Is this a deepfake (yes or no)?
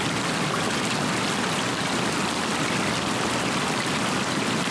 no